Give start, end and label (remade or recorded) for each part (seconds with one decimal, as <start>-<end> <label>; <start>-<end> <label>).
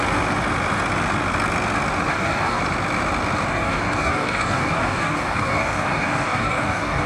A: 0.0-2.1 recorded; 2.1-2.6 remade; 2.6-3.5 recorded; 3.5-7.1 remade